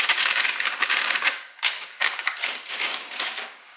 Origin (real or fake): fake